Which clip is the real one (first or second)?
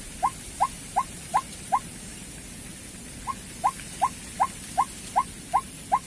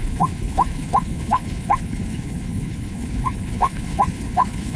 first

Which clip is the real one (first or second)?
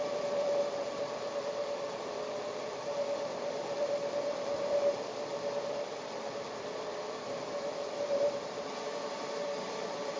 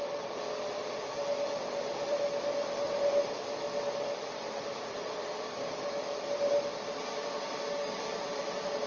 second